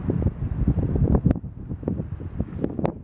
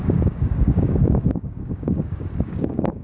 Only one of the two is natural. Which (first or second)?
first